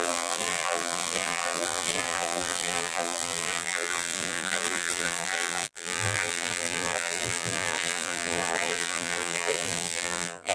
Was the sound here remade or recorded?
remade